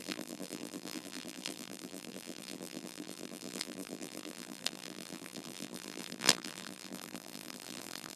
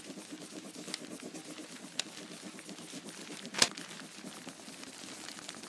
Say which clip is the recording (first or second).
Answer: second